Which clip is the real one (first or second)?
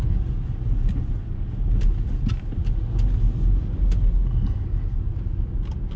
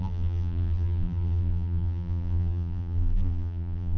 first